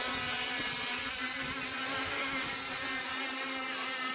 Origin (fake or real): real